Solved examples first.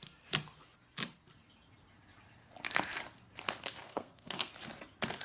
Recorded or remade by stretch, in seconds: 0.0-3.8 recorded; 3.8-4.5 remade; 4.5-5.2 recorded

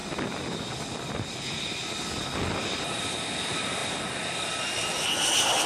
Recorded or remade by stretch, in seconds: 0.0-5.7 recorded

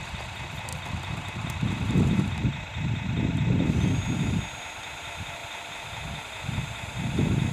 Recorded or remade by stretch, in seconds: 0.0-7.5 recorded